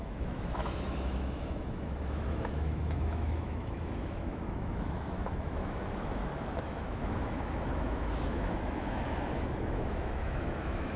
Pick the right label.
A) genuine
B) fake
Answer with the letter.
B